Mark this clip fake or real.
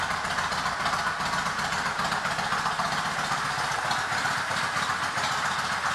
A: real